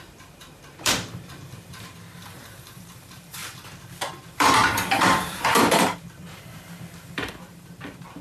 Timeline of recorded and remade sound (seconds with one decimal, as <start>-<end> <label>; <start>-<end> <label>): 0.0-3.4 remade; 3.4-4.1 recorded; 4.1-8.2 remade